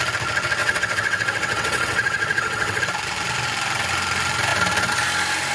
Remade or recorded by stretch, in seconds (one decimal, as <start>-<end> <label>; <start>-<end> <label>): 0.0-0.6 recorded; 0.6-2.8 remade; 2.8-5.5 recorded